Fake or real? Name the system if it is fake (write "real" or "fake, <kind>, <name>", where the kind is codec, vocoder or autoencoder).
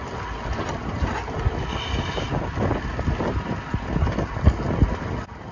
real